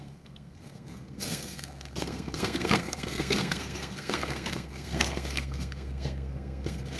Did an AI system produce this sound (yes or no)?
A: yes